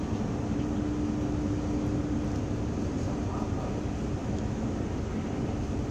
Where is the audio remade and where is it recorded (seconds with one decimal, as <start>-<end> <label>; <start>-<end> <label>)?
0.0-4.2 recorded; 4.2-4.7 remade; 4.7-5.9 recorded